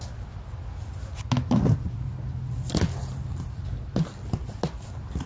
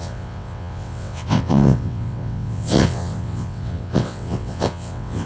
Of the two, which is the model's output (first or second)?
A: second